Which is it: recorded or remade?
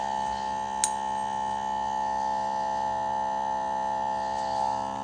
recorded